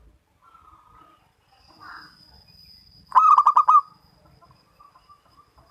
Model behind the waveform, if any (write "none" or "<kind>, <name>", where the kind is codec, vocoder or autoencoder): none